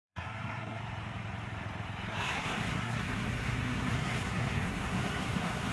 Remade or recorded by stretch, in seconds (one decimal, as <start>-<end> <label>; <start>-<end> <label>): 0.0-0.8 remade; 0.8-2.1 recorded; 2.1-5.7 remade